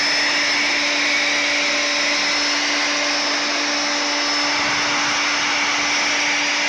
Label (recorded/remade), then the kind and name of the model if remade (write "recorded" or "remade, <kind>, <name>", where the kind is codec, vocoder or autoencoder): recorded